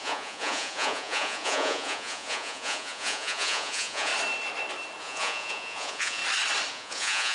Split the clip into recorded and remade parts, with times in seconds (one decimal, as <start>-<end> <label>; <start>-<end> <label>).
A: 0.0-4.1 remade; 4.1-5.0 recorded; 5.0-6.2 remade; 6.2-6.7 recorded; 6.7-7.3 remade